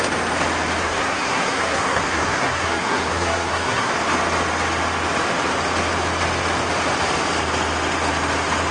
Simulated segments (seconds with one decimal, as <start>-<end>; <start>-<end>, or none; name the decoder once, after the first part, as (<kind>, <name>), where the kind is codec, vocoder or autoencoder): 0.8-3.9 (codec, SNAC)